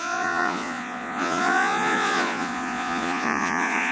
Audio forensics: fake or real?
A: fake